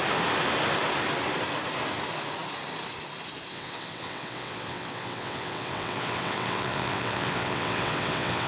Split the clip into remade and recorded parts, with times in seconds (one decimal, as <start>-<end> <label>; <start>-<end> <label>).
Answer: 0.0-3.5 recorded; 3.5-8.5 remade